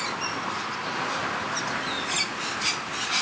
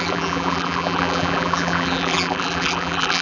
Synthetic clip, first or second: second